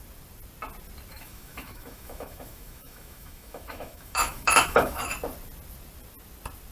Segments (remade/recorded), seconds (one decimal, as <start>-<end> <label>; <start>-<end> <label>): 0.0-1.1 recorded; 1.1-5.1 remade; 5.1-6.7 recorded